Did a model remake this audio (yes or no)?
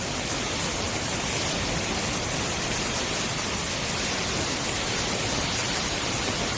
no